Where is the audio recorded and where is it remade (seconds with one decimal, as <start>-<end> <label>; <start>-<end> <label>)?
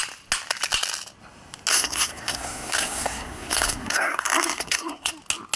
0.0-1.7 recorded; 1.7-5.1 remade; 5.1-5.6 recorded